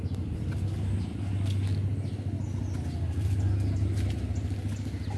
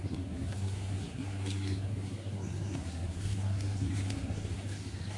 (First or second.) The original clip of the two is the first